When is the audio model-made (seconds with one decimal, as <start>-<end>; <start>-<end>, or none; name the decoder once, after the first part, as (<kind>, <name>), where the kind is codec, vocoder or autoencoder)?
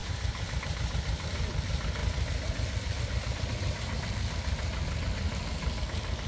0.0-1.5 (vocoder, BigVGAN v2)